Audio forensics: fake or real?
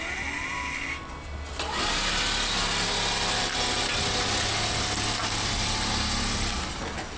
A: real